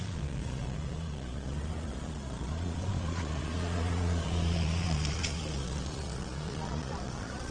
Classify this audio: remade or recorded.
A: remade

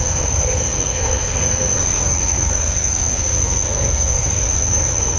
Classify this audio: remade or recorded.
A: remade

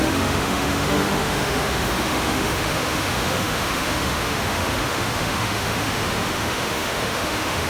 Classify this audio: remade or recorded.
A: remade